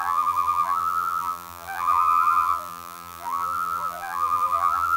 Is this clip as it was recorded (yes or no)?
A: no